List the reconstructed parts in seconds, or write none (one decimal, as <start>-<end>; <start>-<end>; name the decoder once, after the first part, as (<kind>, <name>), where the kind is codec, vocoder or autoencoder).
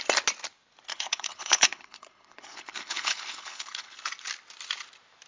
0.9-4.1 (codec, HILCodec)